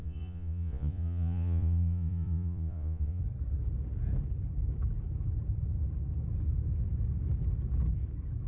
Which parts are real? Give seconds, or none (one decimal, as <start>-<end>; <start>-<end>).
3.2-8.5